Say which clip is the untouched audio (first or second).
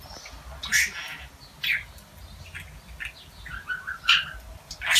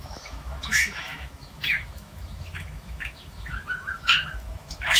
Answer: first